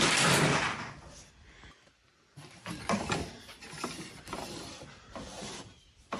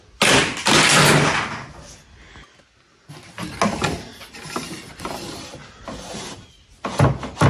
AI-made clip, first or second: first